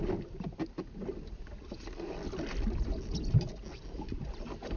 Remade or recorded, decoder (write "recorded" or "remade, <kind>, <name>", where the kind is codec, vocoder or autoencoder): recorded